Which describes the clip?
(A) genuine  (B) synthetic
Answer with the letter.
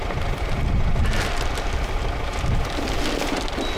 A